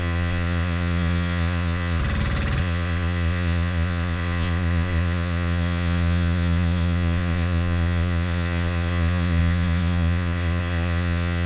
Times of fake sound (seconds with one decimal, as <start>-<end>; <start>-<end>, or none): 0.0-2.0; 2.6-11.5